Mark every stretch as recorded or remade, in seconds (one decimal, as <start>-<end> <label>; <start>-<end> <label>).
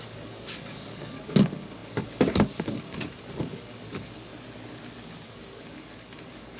0.0-4.3 remade; 4.3-5.3 recorded; 5.3-6.6 remade